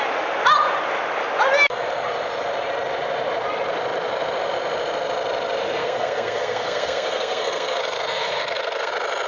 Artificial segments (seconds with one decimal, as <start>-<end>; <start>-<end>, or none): 5.8-8.9